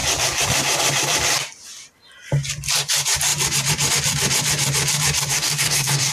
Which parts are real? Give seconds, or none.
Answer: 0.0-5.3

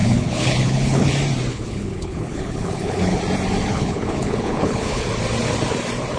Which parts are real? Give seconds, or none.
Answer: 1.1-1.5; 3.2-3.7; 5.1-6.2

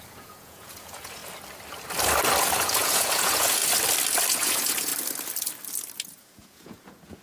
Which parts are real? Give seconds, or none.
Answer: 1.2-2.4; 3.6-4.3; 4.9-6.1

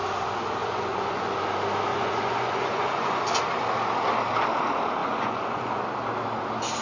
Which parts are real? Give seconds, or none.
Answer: 0.0-0.6; 1.2-1.9; 3.2-5.0; 5.8-6.8